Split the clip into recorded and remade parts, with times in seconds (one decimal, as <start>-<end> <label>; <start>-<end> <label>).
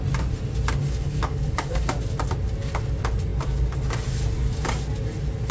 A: 0.0-0.8 recorded; 0.8-1.9 remade; 1.9-5.5 recorded